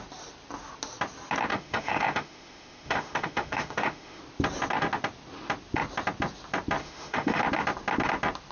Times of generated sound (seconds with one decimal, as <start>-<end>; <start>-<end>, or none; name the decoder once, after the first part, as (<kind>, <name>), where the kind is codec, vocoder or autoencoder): 1.5-4.2 (autoencoder, DAC-VAE); 6.8-7.4